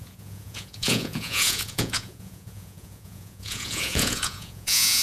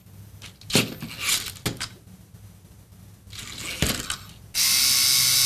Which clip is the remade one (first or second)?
first